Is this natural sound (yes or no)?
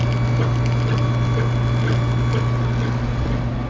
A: yes